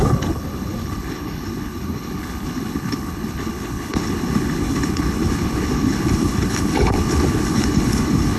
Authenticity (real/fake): fake